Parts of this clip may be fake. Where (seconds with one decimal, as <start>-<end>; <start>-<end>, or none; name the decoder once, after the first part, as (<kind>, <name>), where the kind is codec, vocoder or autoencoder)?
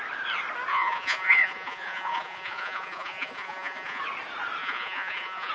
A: 0.7-4.0 (vocoder, Vocos); 4.6-5.5